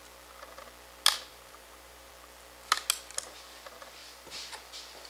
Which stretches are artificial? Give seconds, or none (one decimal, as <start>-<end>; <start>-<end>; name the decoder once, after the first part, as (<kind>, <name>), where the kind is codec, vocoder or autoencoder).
1.3-2.1 (vocoder, BigVGAN v2); 4.0-4.6